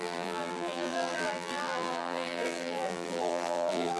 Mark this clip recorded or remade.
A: remade